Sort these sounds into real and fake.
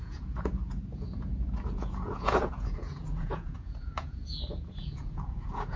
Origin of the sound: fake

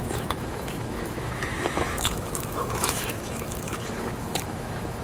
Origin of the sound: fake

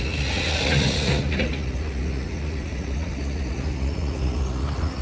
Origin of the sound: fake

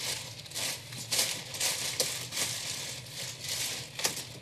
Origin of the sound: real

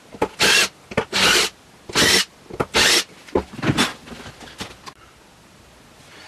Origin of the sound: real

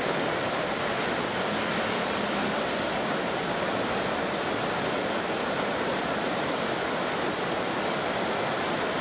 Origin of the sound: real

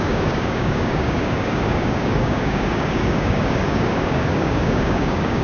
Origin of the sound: fake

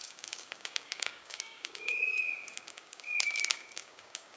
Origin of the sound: fake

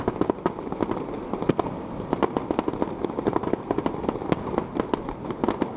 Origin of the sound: real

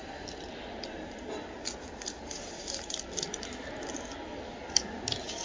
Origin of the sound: real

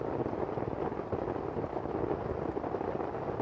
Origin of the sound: real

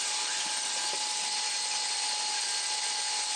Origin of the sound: real